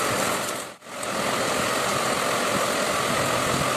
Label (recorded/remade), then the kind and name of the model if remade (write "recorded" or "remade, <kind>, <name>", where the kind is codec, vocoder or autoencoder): recorded